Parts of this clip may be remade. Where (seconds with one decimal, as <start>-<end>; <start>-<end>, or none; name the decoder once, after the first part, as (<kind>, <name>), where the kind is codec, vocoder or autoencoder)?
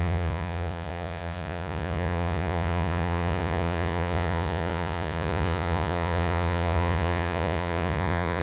0.0-8.4 (vocoder, Vocos)